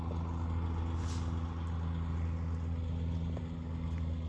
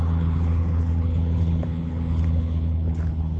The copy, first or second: second